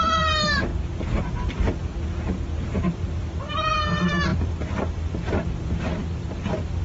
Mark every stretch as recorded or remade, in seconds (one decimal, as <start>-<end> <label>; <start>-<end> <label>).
0.0-0.7 remade; 0.7-1.2 recorded; 1.2-1.8 remade; 1.8-2.8 recorded; 2.8-6.8 remade